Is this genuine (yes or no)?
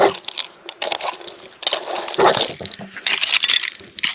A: yes